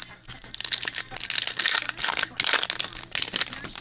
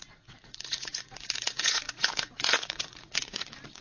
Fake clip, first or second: second